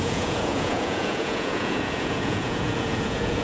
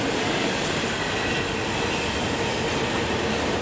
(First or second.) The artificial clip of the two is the first